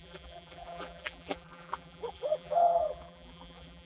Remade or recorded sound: remade